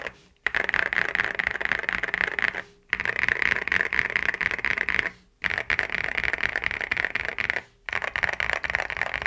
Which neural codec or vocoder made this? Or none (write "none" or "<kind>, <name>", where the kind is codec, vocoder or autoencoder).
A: none